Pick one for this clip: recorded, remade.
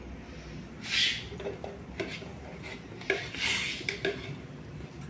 recorded